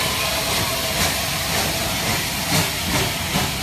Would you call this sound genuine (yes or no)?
yes